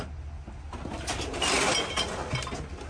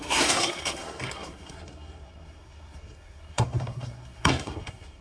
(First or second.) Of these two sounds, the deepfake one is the second